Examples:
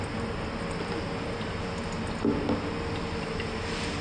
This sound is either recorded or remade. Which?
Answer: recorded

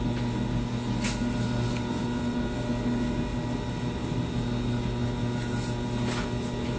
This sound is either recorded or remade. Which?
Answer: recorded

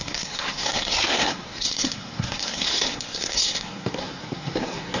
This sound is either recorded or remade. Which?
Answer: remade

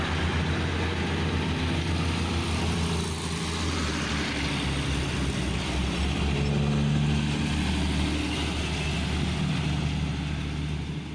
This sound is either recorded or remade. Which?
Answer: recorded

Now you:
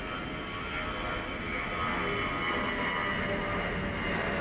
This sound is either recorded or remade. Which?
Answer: recorded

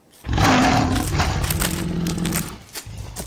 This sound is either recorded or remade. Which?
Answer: recorded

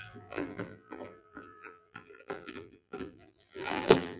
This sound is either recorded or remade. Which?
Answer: remade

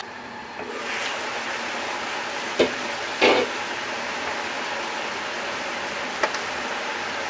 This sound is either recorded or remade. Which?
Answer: recorded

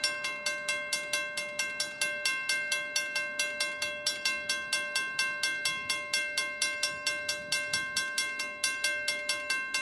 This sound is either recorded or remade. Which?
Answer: recorded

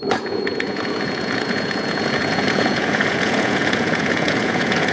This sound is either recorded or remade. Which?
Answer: remade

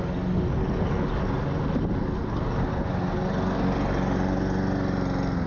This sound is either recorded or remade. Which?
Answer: recorded